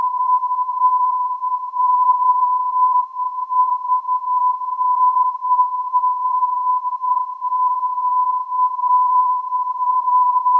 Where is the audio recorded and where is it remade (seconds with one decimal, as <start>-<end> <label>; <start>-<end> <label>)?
0.0-10.6 remade